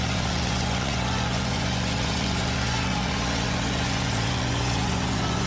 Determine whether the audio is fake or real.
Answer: fake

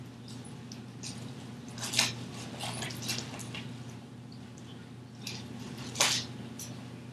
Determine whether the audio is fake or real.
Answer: real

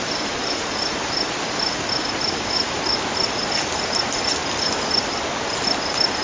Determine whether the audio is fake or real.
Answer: real